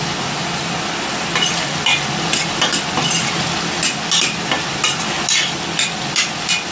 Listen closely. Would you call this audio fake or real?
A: real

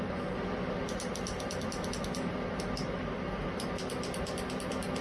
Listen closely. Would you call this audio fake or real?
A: real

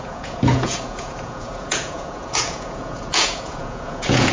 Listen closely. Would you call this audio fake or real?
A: fake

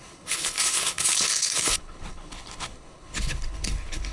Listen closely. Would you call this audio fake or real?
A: fake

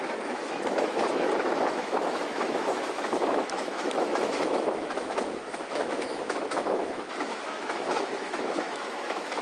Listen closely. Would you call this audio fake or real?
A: fake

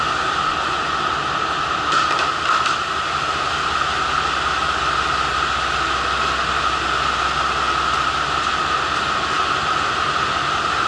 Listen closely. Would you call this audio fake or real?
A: real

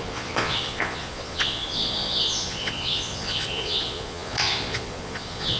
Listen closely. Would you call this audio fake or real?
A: fake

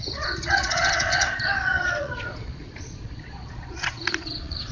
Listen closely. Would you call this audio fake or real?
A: fake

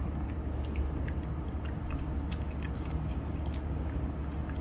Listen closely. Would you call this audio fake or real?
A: real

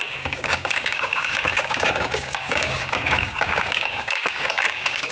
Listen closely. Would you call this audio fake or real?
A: fake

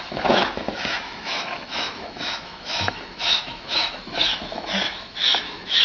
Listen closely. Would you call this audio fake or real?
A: fake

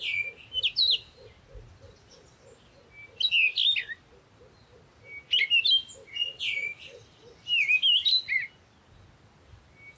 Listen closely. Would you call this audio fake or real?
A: real